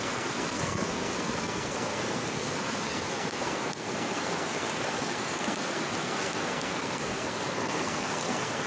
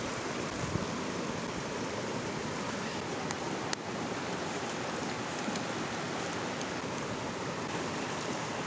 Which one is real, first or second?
second